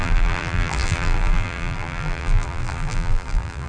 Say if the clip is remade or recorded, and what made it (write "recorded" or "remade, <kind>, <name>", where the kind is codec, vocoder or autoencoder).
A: remade, vocoder, BigVGAN v2